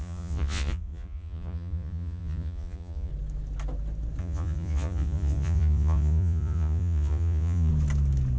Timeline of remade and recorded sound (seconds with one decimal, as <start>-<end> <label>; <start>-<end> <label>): 0.0-3.1 remade; 3.1-4.2 recorded; 4.2-7.7 remade; 7.7-8.4 recorded